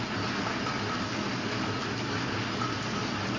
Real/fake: real